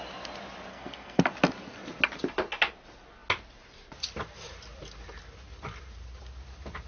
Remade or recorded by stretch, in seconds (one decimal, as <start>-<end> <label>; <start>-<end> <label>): 0.0-0.7 recorded; 0.7-1.2 remade; 1.2-6.9 recorded